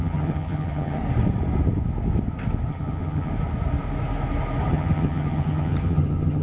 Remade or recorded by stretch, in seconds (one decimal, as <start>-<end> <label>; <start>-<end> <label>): 0.0-1.0 remade; 1.0-2.7 recorded; 2.7-3.3 remade; 3.3-4.7 recorded; 4.7-6.4 remade